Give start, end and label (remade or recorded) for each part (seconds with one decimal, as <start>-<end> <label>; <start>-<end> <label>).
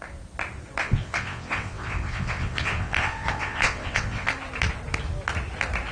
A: 0.0-0.8 recorded; 0.8-4.3 remade; 4.3-5.9 recorded